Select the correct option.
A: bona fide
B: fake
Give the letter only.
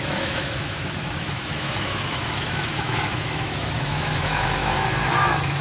B